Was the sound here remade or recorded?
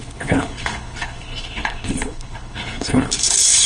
remade